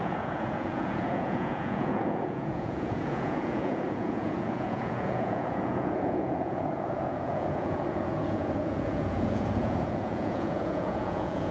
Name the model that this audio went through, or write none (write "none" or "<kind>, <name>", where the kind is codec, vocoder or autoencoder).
vocoder, Vocos